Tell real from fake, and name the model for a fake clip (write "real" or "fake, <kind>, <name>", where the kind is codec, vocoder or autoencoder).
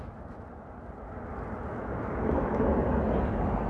real